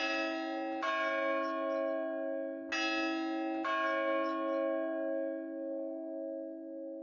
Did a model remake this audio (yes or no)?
no